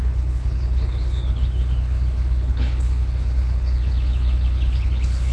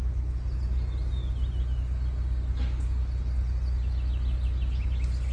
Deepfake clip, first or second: first